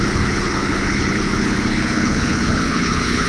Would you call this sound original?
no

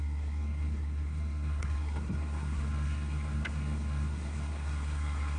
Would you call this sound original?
no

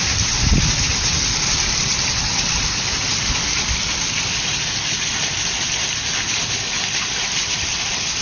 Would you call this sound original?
yes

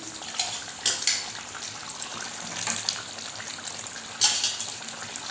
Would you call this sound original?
yes